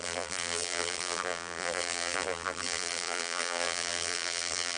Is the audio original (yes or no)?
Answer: no